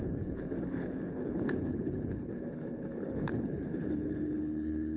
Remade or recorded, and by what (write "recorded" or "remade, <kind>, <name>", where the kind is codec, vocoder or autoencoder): remade, codec, HILCodec